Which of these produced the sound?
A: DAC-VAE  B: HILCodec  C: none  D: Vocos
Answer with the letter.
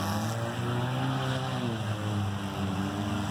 C